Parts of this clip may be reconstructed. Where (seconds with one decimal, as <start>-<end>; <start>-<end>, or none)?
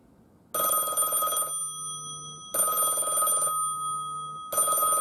none